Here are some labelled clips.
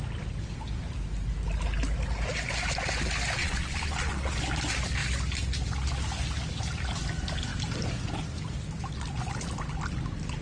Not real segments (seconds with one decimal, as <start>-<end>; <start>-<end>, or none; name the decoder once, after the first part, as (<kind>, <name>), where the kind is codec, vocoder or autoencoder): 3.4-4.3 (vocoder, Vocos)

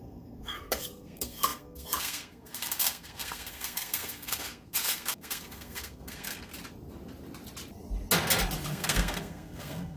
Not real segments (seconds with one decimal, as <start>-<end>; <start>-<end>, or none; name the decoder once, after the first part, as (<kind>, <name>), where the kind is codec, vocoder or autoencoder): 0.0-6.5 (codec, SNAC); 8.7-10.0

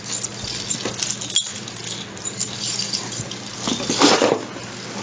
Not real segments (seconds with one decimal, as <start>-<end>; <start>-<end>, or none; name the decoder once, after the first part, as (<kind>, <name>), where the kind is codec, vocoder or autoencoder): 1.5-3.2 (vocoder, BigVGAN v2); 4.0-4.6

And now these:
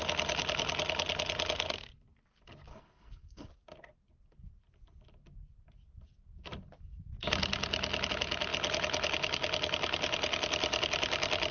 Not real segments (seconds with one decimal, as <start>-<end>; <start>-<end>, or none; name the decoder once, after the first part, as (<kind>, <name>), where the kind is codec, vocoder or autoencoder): 2.7-3.5 (codec, SNAC)

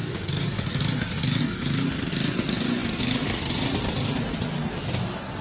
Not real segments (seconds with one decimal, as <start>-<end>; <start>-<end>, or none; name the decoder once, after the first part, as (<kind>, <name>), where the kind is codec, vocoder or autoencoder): none